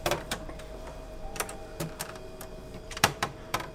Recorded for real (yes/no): no